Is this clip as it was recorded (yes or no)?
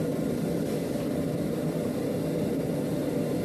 yes